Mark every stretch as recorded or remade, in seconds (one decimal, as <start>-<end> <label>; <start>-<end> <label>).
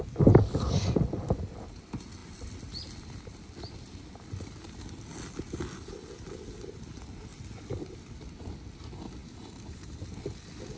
0.0-9.2 recorded; 9.2-10.0 remade; 10.0-10.8 recorded